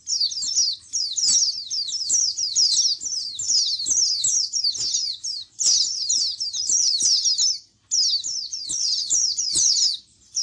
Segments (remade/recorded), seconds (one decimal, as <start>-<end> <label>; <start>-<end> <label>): 0.0-5.0 recorded; 5.0-7.0 remade; 7.0-8.5 recorded; 8.5-9.7 remade; 9.7-10.4 recorded